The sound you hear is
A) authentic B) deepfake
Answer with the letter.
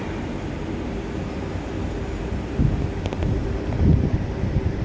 A